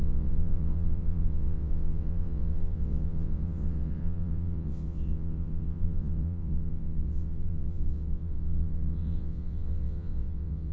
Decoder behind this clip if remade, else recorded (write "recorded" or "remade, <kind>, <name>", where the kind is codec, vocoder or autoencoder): remade, vocoder, WaveNeXt